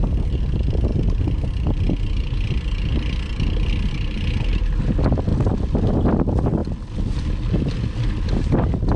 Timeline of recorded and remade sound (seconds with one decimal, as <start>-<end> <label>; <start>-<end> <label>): 0.0-9.0 recorded